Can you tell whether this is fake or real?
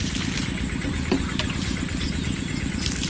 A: real